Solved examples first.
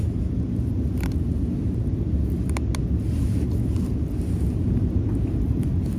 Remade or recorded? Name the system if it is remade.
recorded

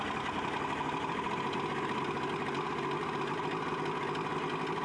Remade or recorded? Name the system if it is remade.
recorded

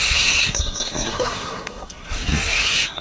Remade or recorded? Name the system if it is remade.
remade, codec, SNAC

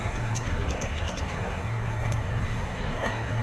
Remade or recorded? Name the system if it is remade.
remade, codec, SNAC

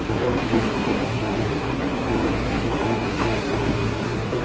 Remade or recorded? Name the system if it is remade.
remade, codec, SNAC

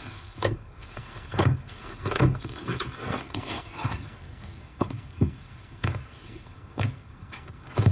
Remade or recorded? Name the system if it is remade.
remade, codec, SNAC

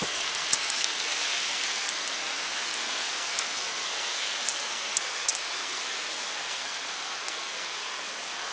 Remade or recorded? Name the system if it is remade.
remade, codec, SNAC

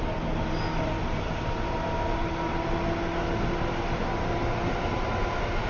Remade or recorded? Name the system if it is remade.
recorded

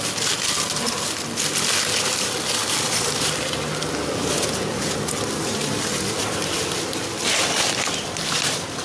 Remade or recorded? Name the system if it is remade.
recorded